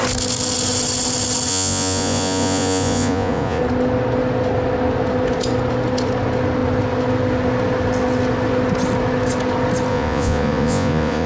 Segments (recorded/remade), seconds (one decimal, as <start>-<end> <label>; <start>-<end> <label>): 0.0-1.5 recorded; 1.5-3.6 remade; 3.6-9.9 recorded; 9.9-11.3 remade